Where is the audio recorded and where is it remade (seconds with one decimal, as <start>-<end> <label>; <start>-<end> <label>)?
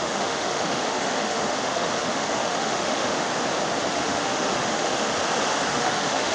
0.0-3.3 remade; 3.3-3.9 recorded; 3.9-5.1 remade; 5.1-5.7 recorded; 5.7-6.3 remade